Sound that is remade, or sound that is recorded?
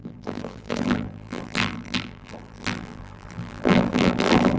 remade